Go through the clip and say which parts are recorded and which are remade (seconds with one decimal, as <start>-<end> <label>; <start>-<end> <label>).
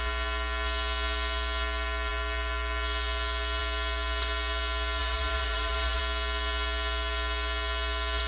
0.0-5.0 recorded; 5.0-6.0 remade; 6.0-8.3 recorded